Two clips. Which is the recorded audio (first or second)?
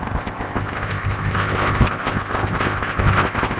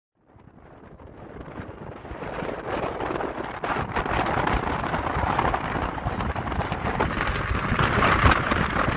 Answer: second